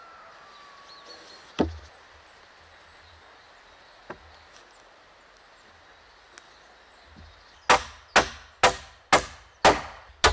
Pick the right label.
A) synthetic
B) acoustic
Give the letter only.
B